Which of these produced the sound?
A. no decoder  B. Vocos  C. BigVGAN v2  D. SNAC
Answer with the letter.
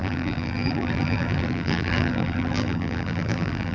C